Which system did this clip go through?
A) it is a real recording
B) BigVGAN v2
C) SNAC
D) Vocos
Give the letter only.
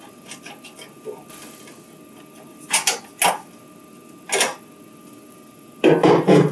A